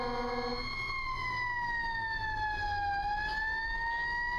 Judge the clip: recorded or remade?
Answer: recorded